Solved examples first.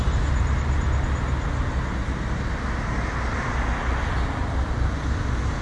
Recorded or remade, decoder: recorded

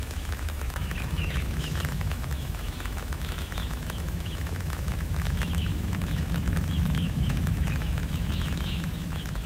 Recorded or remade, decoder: remade, autoencoder, DAC-VAE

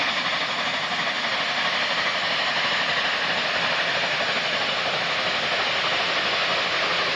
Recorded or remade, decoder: recorded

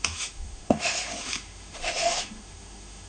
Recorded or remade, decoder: remade, autoencoder, DAC-VAE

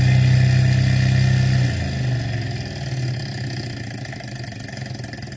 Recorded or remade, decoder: recorded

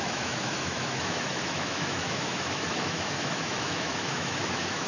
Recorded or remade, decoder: remade, autoencoder, DAC-VAE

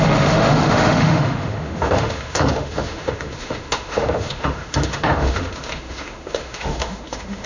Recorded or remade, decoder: remade, autoencoder, DAC-VAE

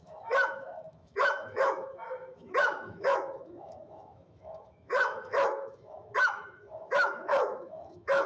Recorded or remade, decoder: remade, autoencoder, DAC-VAE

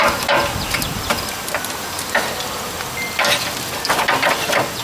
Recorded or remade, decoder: recorded